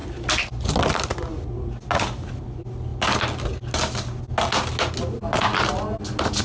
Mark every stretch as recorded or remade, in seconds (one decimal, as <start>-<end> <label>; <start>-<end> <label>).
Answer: 0.0-6.4 recorded